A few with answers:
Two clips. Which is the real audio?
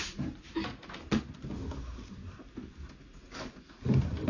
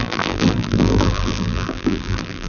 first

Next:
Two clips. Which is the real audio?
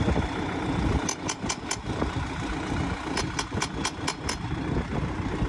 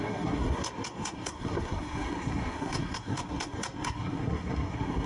first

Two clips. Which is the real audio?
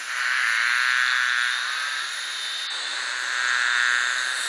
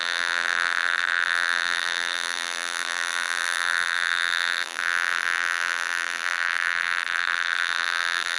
first